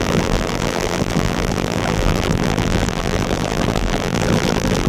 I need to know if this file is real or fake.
fake